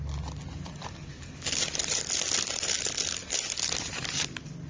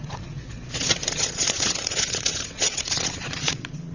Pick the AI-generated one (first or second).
second